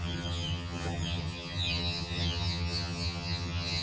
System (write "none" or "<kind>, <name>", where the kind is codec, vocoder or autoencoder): vocoder, HiFi-GAN